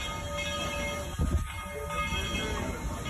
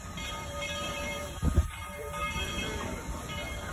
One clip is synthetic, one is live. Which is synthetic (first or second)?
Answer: second